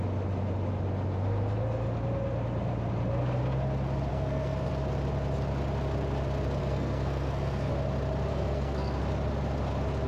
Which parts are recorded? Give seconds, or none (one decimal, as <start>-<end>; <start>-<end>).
0.0-4.1; 4.7-6.6; 7.7-8.3; 9.0-10.1